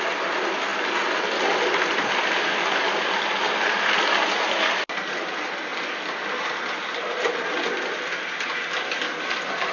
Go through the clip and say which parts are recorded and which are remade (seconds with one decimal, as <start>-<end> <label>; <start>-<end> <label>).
0.0-9.7 recorded